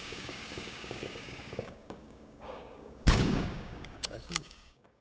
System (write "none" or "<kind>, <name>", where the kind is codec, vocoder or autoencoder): codec, DAC